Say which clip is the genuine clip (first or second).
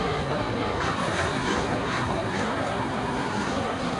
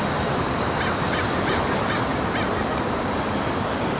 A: second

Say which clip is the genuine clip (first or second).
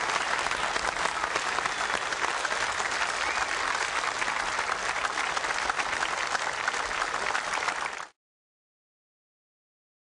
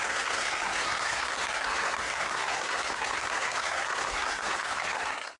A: first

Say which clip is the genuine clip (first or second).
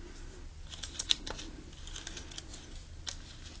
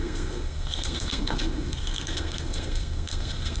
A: first